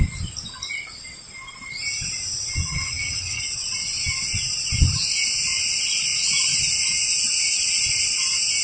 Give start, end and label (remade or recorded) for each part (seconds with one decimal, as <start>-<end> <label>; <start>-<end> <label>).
0.0-2.7 recorded; 2.7-3.4 remade; 3.4-8.6 recorded